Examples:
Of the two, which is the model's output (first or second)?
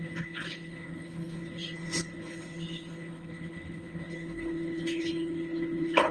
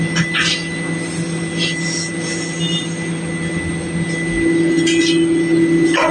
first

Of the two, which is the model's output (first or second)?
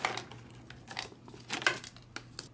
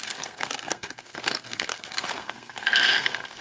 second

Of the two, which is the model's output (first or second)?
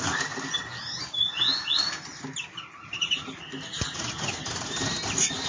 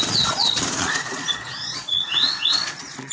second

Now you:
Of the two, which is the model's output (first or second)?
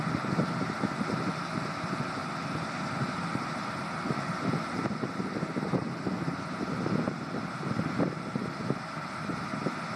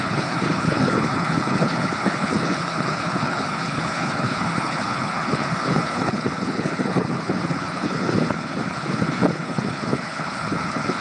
second